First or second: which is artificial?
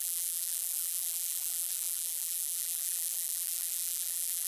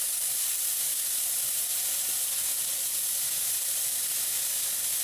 first